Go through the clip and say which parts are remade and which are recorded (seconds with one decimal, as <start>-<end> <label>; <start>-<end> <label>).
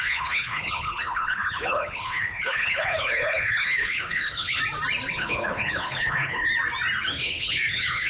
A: 0.0-4.6 remade; 4.6-5.1 recorded; 5.1-6.5 remade; 6.5-7.1 recorded; 7.1-8.1 remade